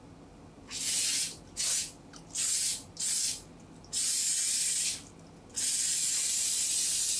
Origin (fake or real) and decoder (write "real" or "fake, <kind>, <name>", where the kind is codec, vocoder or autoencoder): real